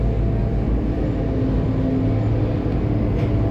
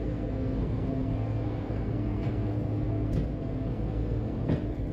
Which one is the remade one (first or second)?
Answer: second